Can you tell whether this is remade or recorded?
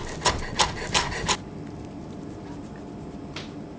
recorded